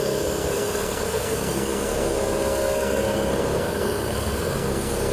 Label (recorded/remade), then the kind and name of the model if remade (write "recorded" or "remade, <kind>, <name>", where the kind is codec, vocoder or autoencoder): remade, codec, SNAC